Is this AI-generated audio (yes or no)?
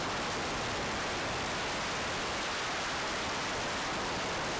no